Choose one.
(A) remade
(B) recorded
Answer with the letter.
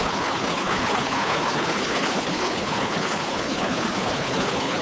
A